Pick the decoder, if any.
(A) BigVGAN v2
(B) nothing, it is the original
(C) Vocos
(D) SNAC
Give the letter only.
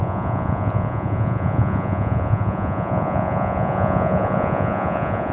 C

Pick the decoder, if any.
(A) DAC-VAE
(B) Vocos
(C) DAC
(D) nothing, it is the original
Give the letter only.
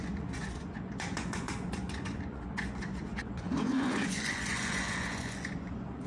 B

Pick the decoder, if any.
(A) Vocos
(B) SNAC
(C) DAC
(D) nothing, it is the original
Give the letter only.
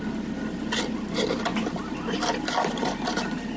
D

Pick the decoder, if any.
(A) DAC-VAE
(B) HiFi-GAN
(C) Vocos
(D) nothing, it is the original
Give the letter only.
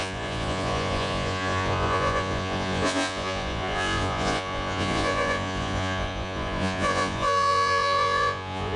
C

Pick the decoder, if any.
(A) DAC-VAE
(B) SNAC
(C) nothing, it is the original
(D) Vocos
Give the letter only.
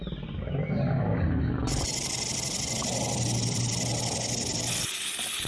C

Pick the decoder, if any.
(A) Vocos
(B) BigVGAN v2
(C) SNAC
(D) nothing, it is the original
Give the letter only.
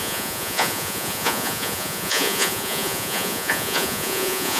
A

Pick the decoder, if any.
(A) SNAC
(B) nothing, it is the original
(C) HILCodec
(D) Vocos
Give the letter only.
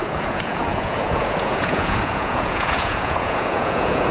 D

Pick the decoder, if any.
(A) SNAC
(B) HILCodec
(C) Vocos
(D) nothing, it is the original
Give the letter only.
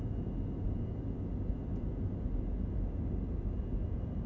D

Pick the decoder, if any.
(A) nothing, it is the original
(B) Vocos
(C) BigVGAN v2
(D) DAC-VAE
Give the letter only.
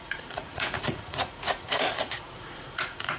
B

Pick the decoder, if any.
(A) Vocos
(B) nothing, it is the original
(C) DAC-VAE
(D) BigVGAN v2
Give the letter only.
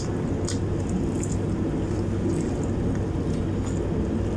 B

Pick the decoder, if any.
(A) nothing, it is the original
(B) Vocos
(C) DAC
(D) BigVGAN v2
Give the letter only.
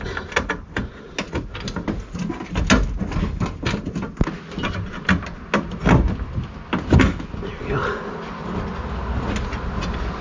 A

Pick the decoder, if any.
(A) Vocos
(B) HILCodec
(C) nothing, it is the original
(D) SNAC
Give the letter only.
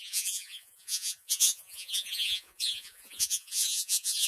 A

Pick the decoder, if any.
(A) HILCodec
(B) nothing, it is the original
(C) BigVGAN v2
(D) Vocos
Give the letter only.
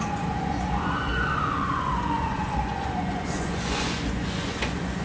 D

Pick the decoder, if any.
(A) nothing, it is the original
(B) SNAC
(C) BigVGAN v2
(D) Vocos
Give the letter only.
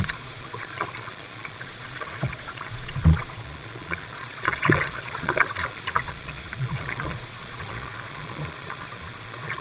D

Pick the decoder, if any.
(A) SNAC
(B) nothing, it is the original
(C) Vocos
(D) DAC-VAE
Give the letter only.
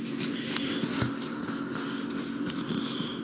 B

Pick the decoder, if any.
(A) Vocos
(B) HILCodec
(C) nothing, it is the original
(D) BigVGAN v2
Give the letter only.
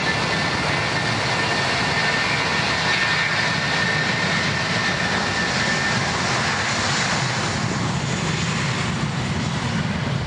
C